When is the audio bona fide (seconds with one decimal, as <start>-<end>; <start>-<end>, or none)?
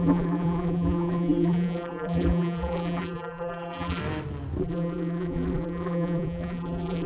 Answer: 4.0-4.6